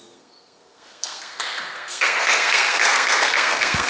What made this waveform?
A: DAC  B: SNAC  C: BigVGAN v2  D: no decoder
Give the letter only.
B